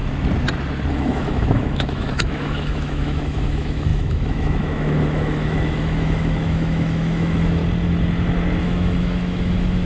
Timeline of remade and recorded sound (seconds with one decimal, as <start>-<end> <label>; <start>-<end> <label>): 0.0-0.9 recorded; 0.9-7.6 remade; 7.6-8.6 recorded; 8.6-9.9 remade